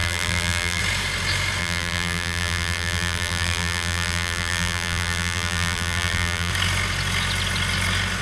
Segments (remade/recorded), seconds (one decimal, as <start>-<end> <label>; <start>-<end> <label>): 0.0-0.8 remade; 0.8-1.6 recorded; 1.6-6.5 remade; 6.5-8.2 recorded